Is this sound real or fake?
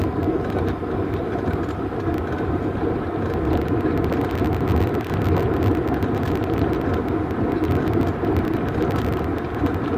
real